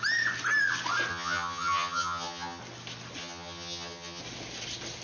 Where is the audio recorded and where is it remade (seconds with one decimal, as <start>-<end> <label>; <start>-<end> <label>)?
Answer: 0.0-1.1 recorded; 1.1-2.6 remade; 2.6-3.2 recorded; 3.2-4.2 remade; 4.2-5.0 recorded